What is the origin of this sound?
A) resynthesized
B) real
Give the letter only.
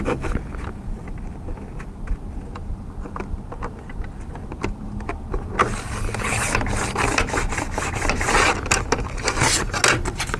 B